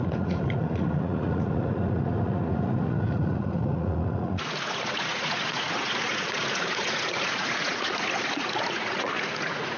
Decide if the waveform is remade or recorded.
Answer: remade